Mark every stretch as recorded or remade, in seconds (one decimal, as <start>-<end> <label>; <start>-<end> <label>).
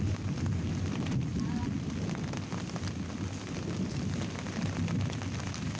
0.0-5.8 recorded